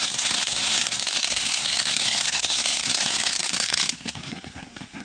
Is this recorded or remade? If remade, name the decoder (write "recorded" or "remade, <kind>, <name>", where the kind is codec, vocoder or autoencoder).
remade, codec, SNAC